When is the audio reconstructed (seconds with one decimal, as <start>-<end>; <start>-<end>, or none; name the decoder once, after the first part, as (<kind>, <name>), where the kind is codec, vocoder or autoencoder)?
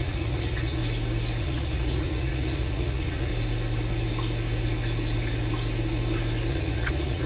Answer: 0.0-0.8 (vocoder, Vocos); 1.4-3.3; 6.5-7.3